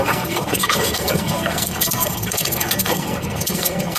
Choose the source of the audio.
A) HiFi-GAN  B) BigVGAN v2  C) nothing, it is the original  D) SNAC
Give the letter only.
D